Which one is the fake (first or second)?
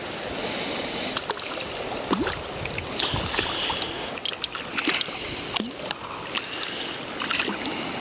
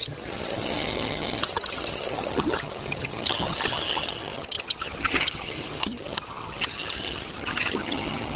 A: second